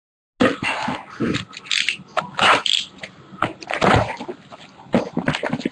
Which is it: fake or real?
real